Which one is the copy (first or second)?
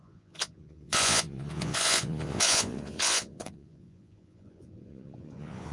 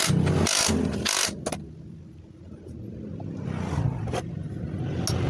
first